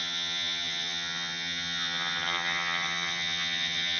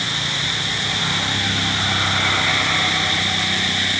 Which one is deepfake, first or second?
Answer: first